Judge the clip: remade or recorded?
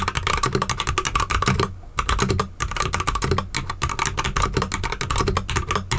recorded